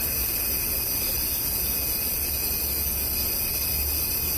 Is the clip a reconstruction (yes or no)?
no